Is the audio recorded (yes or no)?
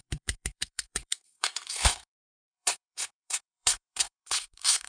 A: no